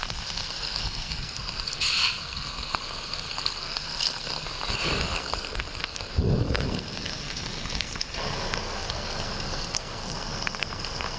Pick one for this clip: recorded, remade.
remade